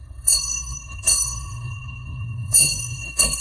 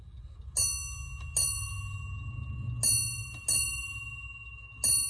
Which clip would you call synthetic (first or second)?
first